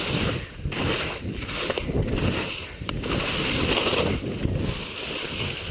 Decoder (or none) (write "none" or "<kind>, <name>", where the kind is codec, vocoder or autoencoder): none